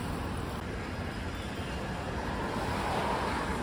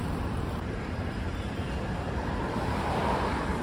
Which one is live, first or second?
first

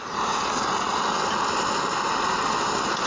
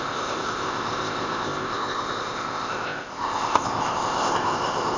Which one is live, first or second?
first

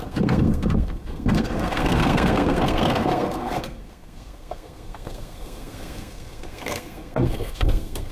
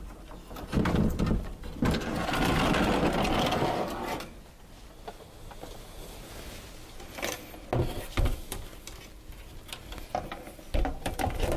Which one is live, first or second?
second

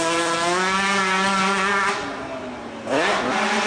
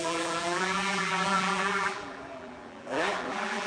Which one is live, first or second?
first